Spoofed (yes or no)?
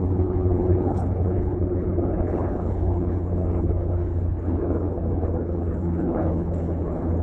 yes